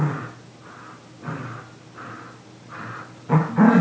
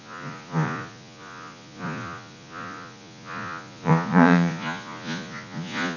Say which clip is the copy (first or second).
second